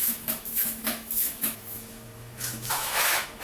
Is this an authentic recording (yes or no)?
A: no